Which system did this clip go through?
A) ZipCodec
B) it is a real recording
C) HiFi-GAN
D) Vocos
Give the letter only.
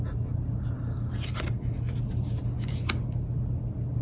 B